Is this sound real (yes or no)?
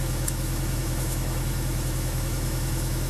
no